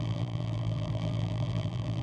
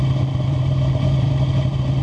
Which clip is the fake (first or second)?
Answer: first